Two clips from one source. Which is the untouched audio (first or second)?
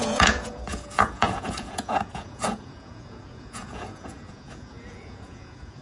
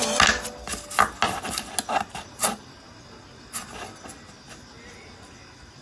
second